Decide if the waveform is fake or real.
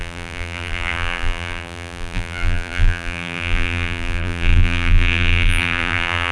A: fake